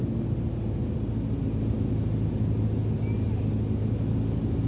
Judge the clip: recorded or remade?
recorded